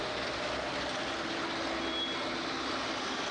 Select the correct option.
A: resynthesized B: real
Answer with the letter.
B